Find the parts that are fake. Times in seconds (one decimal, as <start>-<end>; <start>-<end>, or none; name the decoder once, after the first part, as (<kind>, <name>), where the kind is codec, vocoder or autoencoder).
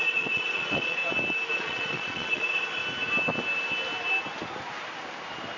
0.0-1.0 (vocoder, Vocos); 1.5-2.8